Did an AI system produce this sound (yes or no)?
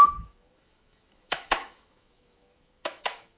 yes